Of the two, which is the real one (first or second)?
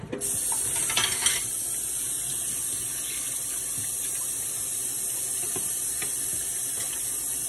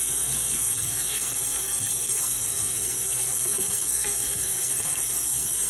first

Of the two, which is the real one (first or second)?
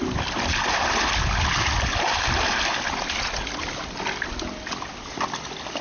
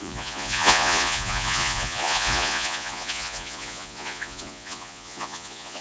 first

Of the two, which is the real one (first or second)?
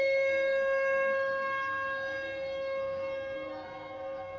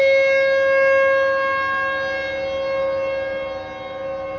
second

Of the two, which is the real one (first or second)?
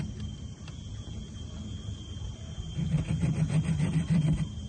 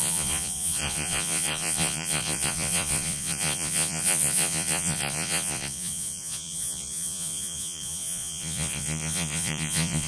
first